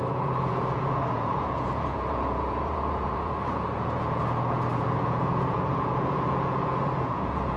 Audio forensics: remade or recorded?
remade